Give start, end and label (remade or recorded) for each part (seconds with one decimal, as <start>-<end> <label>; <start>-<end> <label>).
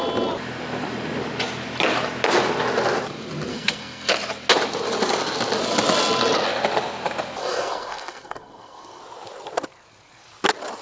0.0-3.5 recorded; 3.5-4.1 remade; 4.1-7.4 recorded; 7.4-9.0 remade; 9.0-10.8 recorded